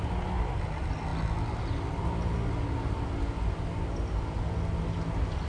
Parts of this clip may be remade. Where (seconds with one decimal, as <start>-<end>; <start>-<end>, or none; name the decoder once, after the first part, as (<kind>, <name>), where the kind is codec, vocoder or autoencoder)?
none